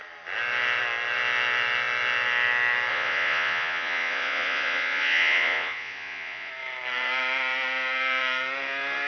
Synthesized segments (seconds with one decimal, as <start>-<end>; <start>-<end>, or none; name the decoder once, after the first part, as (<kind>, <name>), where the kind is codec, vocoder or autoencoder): 2.9-6.5 (vocoder, Vocos)